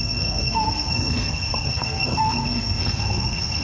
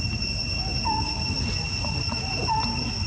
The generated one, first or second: first